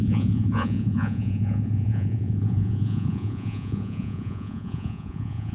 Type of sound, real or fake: fake